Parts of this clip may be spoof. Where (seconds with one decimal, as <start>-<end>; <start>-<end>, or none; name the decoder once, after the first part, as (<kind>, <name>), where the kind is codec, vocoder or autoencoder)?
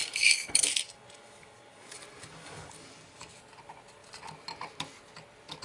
0.0-3.4 (codec, DAC)